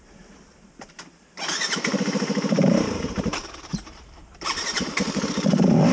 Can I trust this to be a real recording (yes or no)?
no